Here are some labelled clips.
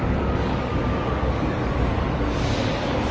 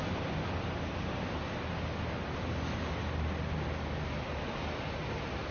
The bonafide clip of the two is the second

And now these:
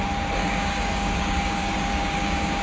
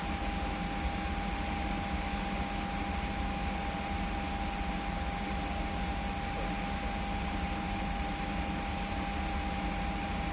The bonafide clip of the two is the second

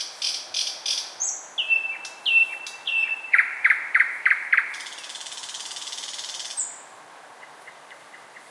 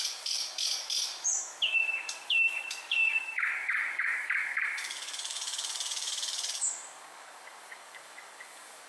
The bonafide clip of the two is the first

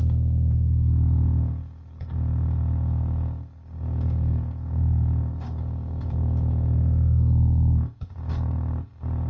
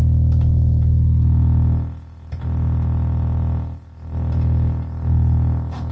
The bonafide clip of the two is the second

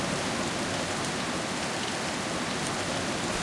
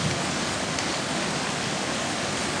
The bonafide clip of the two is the first